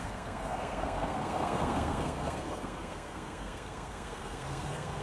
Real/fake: fake